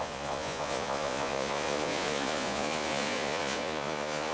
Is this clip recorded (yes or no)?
no